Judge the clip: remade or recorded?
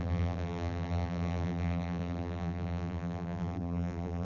remade